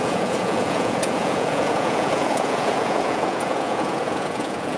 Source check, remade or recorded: remade